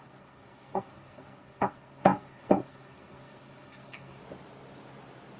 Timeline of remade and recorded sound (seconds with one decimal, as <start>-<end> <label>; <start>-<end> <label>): 0.0-4.2 remade; 4.2-5.4 recorded